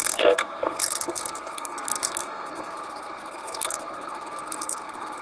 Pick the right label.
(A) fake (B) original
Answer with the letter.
A